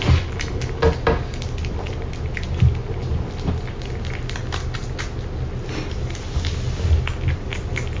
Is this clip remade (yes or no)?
no